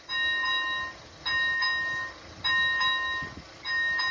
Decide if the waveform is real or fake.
real